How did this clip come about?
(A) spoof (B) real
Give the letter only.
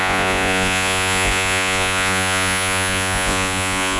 A